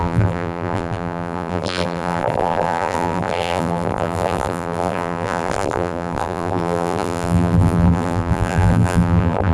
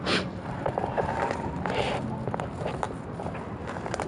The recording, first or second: second